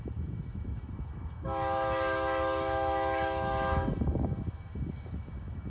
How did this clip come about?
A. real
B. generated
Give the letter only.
B